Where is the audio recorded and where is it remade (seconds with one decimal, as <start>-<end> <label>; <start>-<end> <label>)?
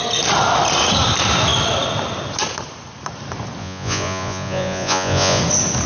0.0-3.6 recorded; 3.6-5.4 remade; 5.4-5.9 recorded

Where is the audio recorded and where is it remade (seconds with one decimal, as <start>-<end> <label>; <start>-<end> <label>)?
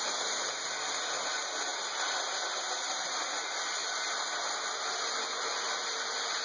0.0-6.4 recorded